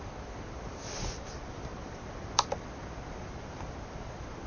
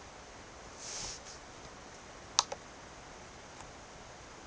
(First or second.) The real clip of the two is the second